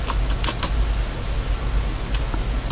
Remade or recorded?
recorded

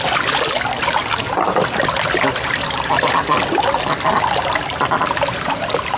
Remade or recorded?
recorded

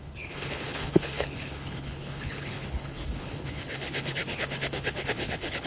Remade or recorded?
remade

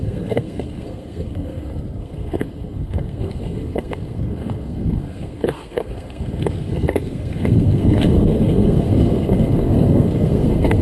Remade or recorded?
remade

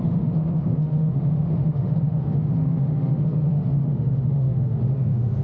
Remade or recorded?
remade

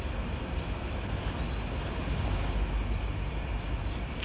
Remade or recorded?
recorded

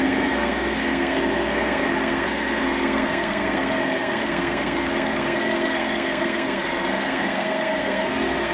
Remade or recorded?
remade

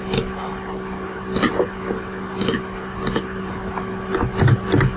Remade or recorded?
recorded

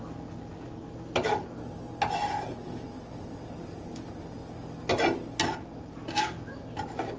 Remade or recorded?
recorded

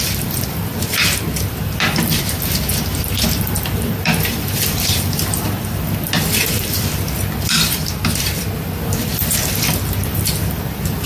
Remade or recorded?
remade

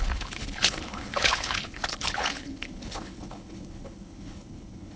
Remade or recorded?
remade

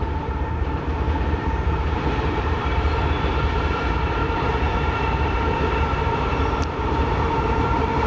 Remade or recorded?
remade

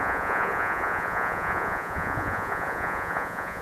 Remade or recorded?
remade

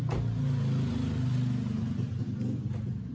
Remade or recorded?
recorded